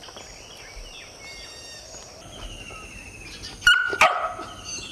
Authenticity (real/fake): real